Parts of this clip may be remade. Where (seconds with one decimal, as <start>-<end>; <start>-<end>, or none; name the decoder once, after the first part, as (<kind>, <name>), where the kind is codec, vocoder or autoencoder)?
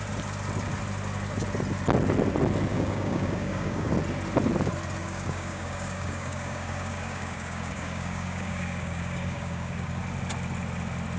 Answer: 2.7-3.9 (codec, DAC); 5.0-10.0